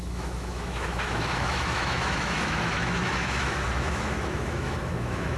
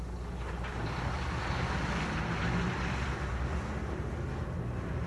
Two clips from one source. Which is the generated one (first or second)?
first